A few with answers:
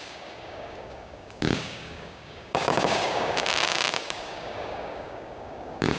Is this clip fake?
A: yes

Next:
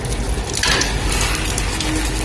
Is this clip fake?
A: no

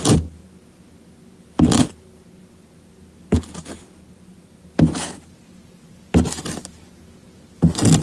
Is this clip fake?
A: no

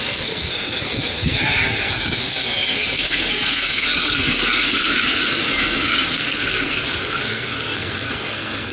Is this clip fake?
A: yes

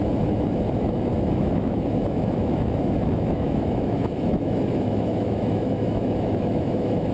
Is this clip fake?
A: yes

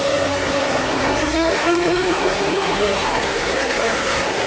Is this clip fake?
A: yes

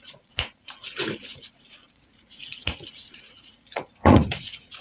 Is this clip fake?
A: yes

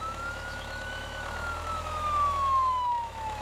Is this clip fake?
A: yes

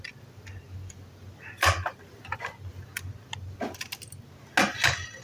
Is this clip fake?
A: no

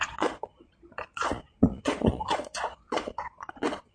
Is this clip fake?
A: yes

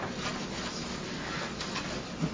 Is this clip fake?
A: no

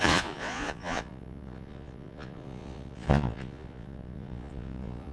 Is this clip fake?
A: yes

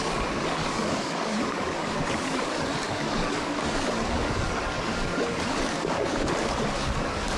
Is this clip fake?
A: yes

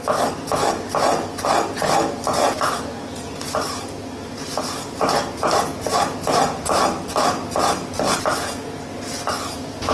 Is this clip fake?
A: no